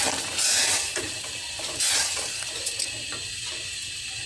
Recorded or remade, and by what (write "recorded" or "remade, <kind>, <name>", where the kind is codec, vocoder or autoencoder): recorded